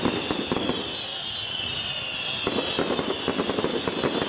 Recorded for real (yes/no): yes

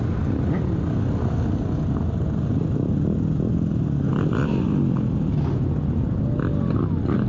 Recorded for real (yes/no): yes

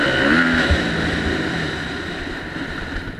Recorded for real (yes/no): yes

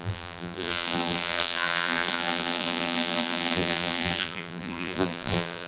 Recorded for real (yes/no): no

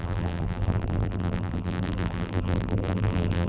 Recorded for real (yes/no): no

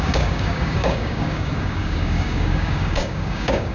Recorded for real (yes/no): no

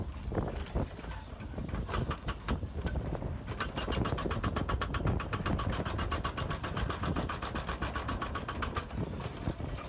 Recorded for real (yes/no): yes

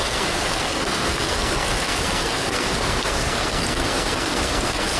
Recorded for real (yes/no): no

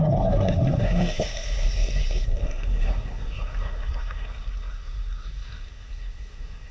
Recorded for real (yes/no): no